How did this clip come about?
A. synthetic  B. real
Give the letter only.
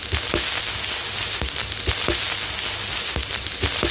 B